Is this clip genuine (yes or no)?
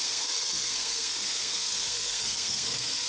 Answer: no